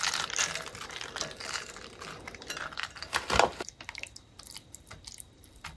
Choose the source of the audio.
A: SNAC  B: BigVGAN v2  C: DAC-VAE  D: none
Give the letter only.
B